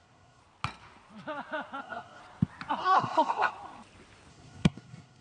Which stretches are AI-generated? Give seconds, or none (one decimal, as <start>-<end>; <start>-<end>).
0.0-0.4; 1.8-2.2; 2.8-3.5; 4.3-5.2